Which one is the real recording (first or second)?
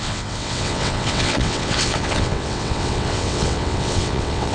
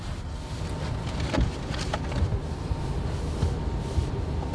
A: second